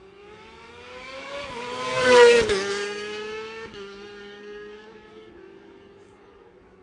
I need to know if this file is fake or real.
fake